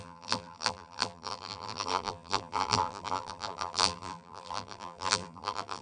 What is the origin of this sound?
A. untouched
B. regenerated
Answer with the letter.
B